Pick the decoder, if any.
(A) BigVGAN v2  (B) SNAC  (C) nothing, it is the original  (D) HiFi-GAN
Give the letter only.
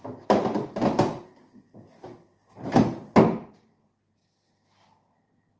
C